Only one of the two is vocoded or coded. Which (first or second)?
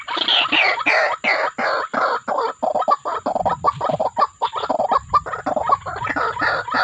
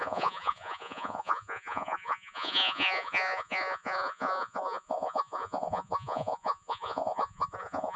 second